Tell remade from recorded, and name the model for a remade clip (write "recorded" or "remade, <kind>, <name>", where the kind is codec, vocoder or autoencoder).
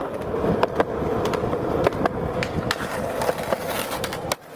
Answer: recorded